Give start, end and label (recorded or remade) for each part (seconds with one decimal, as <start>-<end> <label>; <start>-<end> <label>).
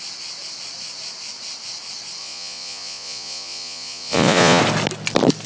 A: 0.0-2.2 recorded; 2.2-4.6 remade; 4.6-5.5 recorded